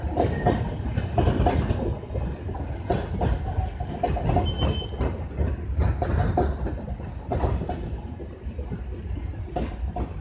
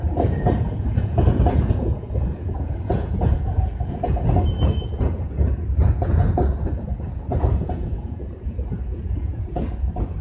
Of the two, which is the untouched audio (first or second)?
first